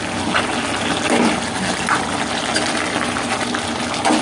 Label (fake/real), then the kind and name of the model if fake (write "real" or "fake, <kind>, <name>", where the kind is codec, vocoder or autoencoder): real